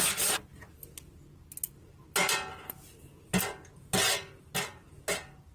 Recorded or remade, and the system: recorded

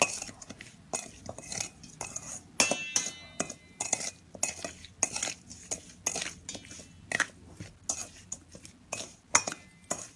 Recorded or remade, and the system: recorded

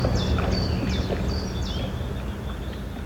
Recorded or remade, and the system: recorded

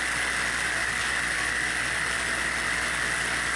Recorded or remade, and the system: recorded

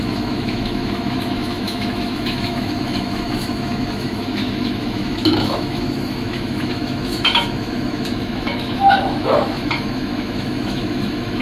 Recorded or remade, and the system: remade, autoencoder, DAC-VAE